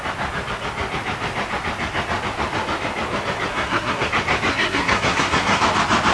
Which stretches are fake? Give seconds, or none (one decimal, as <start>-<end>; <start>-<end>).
3.5-4.1; 4.5-5.6